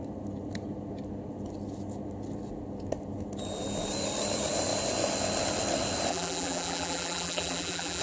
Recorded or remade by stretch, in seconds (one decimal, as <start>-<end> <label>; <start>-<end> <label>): 0.0-6.1 recorded; 6.1-8.0 remade